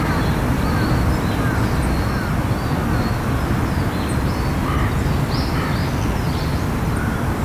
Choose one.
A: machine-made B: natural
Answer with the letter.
B